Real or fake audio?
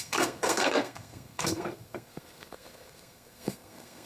fake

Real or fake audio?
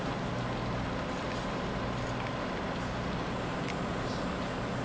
real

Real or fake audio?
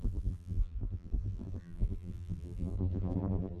fake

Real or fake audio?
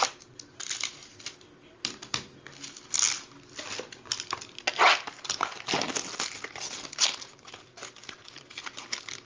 real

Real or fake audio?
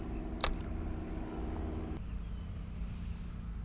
real